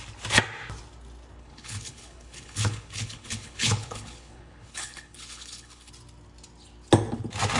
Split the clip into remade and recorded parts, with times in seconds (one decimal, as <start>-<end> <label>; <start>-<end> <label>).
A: 0.0-1.4 recorded; 1.4-5.9 remade; 5.9-7.6 recorded

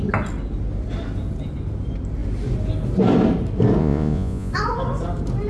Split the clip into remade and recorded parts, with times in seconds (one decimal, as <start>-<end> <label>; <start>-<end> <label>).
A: 0.0-3.8 recorded; 3.8-4.5 remade; 4.5-5.5 recorded

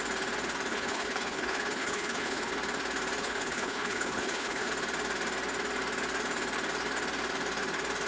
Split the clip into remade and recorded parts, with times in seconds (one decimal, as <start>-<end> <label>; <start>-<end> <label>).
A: 0.0-0.7 recorded; 0.7-2.5 remade; 2.5-3.2 recorded; 3.2-4.7 remade; 4.7-8.1 recorded

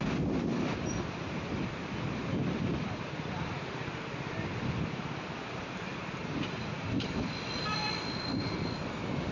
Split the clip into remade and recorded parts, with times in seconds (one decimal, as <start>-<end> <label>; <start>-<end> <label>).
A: 0.0-9.3 remade